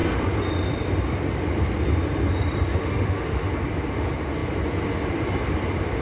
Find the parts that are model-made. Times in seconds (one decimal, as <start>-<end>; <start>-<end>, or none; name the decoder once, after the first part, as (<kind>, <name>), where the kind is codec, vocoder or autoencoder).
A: 2.7-3.5 (autoencoder, DAC-VAE)